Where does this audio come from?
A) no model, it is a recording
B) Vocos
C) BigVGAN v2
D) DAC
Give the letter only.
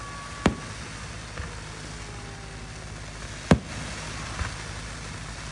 A